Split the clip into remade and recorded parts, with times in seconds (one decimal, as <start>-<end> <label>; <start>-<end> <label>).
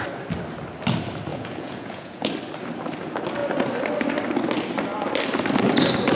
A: 0.0-1.3 recorded; 1.3-2.3 remade; 2.3-6.1 recorded